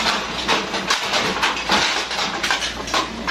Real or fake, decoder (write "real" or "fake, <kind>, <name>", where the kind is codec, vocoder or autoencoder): real